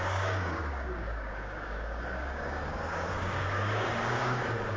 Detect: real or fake fake